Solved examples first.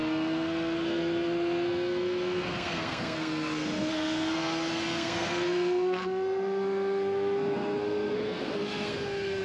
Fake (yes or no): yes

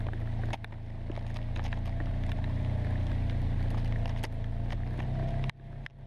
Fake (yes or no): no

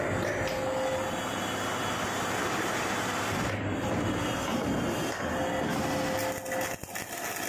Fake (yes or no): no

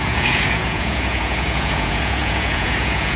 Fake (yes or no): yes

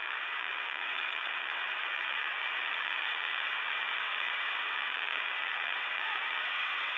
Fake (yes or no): yes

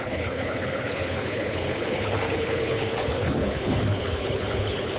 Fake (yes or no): yes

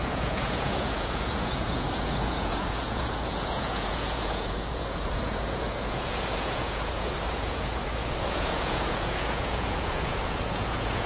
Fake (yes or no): yes